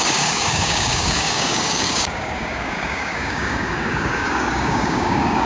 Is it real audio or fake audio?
fake